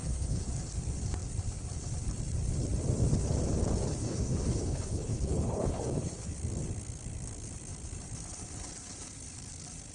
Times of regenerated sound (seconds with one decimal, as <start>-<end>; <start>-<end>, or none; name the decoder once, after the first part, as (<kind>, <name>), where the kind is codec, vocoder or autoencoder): 0.0-0.5 (codec, HILCodec); 4.0-6.3